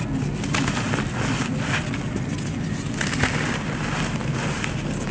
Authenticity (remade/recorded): recorded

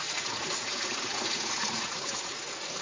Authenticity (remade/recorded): remade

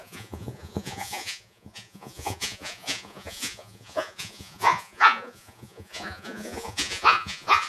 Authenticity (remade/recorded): remade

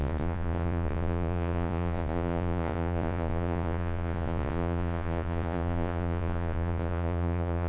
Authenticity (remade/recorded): remade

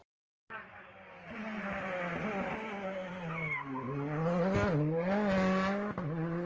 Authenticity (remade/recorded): recorded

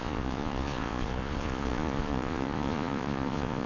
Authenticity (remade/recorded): remade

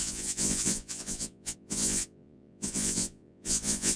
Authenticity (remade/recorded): remade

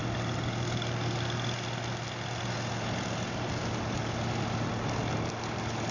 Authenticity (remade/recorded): recorded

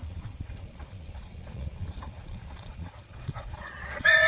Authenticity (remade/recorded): remade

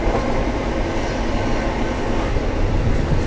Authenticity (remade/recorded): recorded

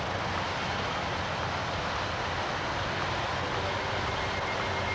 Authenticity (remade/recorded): recorded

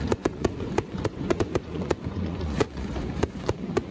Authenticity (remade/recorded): remade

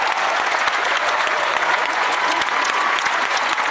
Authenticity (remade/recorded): remade